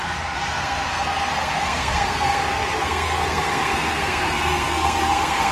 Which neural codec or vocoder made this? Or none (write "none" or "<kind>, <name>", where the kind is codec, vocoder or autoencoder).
codec, SNAC